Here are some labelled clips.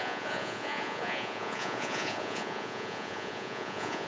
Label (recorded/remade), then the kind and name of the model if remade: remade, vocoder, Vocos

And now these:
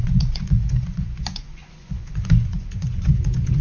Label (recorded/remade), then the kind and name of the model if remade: remade, vocoder, Vocos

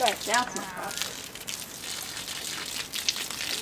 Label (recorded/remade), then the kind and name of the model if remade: recorded